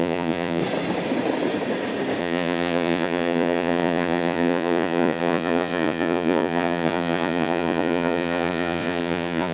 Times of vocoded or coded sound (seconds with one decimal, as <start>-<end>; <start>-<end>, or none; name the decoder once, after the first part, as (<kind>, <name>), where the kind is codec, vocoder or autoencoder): 0.0-0.6 (vocoder, Vocos); 2.2-9.5